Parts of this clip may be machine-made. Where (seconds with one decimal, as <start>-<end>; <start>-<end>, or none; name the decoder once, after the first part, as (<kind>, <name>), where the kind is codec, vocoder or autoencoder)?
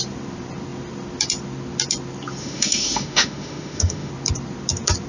2.4-4.1 (autoencoder, DAC-VAE)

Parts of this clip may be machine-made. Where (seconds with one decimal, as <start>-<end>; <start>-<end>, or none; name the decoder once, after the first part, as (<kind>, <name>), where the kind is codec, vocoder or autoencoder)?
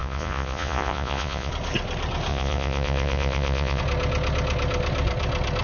0.0-1.5 (vocoder, Vocos); 2.3-3.8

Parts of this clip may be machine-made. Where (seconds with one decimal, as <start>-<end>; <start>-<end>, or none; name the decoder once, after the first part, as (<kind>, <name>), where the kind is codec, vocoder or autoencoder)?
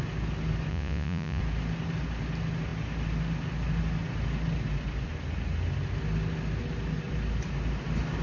0.7-1.4 (vocoder, Vocos)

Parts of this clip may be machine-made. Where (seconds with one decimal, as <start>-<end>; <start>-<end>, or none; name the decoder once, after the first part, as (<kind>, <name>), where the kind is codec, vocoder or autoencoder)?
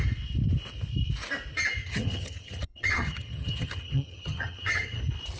1.8-5.0 (vocoder, HiFi-GAN)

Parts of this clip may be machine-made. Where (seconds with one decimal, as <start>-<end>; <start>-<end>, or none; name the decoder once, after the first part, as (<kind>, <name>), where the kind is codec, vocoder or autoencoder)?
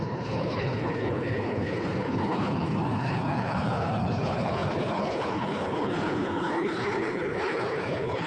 0.0-8.3 (codec, HILCodec)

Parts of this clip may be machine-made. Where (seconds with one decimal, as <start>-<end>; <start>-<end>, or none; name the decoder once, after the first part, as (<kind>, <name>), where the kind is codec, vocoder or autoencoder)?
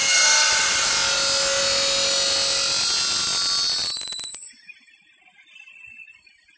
3.8-4.6 (vocoder, BigVGAN v2)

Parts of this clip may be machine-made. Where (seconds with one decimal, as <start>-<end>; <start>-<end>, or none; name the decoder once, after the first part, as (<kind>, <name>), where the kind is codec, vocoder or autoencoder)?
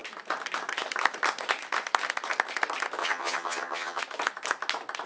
3.0-4.0 (vocoder, HiFi-GAN)